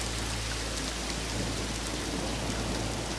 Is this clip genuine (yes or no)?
yes